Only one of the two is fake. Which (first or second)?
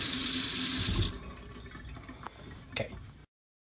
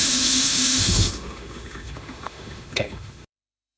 second